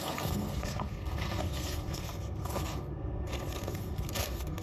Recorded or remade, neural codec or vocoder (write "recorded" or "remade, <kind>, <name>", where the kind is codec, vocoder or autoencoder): remade, codec, SNAC